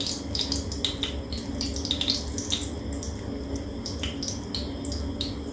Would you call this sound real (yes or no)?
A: yes